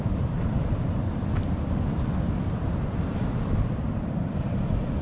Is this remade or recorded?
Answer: remade